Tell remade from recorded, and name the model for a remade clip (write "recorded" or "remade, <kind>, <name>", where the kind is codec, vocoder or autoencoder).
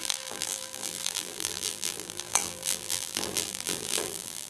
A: remade, vocoder, BigVGAN v2